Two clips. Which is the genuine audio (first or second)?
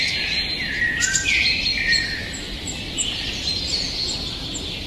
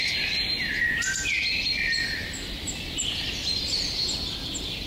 second